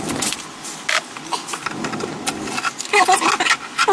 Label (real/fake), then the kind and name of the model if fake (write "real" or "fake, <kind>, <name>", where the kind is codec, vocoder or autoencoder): real